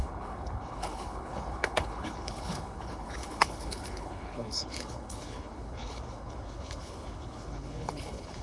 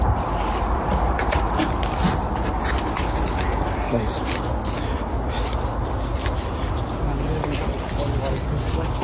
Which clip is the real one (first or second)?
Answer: second